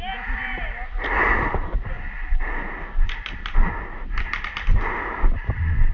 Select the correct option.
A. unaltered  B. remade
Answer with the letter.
A